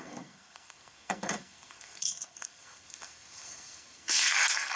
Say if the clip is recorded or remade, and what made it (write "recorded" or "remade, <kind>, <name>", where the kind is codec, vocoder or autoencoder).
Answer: remade, codec, SNAC